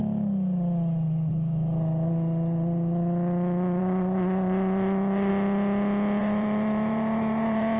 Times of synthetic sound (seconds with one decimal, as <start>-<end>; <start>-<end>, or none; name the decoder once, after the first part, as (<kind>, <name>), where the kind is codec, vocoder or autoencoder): 3.8-5.3 (vocoder, BigVGAN v2); 6.2-7.8